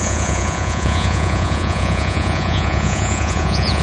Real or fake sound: fake